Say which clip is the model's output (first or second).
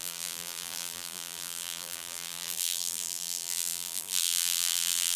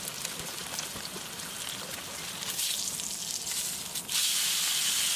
first